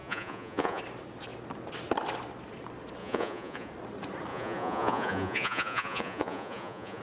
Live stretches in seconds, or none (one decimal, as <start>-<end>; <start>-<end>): 0.8-3.0; 3.7-4.3